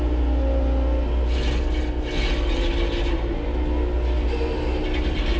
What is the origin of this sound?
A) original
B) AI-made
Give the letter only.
A